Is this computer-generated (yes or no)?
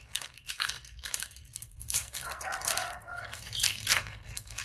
yes